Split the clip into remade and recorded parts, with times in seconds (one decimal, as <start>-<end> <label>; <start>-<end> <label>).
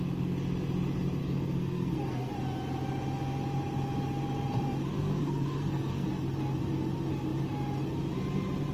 0.0-1.2 recorded; 1.2-2.3 remade; 2.3-4.9 recorded; 4.9-6.1 remade; 6.1-8.7 recorded